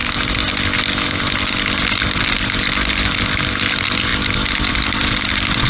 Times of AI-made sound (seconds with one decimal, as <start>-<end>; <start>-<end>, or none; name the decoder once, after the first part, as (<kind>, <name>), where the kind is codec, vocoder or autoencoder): none